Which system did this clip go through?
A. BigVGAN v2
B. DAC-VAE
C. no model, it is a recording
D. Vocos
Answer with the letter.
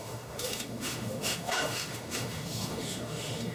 B